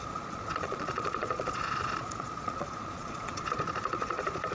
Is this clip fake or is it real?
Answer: fake